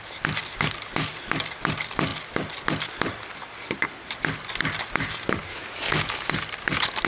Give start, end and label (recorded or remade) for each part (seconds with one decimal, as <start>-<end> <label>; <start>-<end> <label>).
0.0-5.5 recorded; 5.5-6.3 remade; 6.3-7.1 recorded